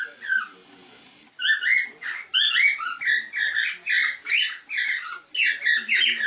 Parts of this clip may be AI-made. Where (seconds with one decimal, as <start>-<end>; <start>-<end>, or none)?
none